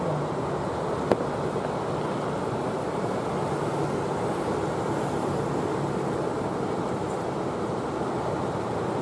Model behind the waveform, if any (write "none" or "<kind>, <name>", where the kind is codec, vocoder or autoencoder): none